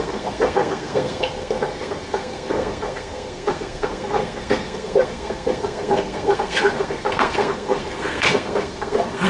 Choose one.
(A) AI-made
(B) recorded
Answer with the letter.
A